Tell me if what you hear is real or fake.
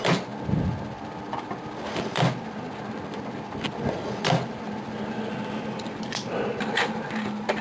real